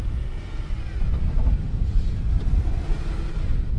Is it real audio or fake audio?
real